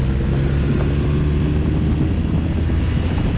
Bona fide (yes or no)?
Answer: yes